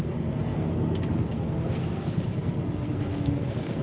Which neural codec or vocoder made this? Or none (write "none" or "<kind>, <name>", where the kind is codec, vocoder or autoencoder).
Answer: codec, SNAC